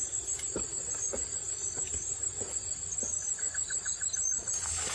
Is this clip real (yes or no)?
yes